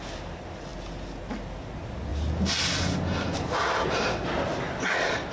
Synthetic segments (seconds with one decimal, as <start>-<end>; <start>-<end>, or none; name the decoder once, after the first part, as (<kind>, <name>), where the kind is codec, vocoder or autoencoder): none